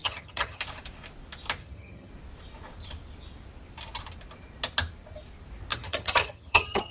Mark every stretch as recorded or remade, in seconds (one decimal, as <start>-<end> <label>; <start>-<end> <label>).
0.0-0.6 remade; 0.6-1.6 recorded; 1.6-2.1 remade; 2.1-5.7 recorded; 5.7-6.9 remade